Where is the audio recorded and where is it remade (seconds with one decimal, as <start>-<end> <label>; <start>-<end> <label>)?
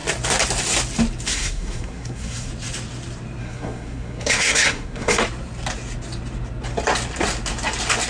0.0-1.3 recorded; 1.3-2.5 remade; 2.5-3.4 recorded; 3.4-5.2 remade; 5.2-8.1 recorded